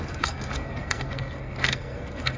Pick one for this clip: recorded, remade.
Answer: remade